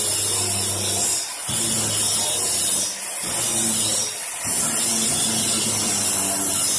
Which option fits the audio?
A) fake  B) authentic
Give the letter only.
B